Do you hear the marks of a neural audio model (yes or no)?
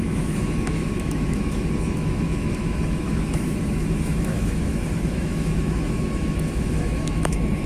yes